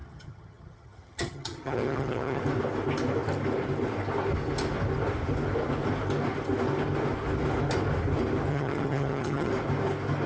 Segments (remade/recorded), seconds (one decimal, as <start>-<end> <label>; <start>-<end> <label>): 0.0-2.4 remade; 2.4-8.5 recorded; 8.5-9.5 remade; 9.5-10.3 recorded